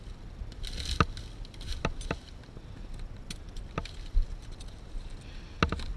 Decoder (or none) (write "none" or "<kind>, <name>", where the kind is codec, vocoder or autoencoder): none